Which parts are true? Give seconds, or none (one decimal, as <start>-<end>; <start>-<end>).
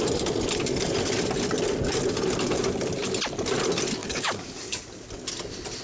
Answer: 0.0-4.0; 4.8-5.8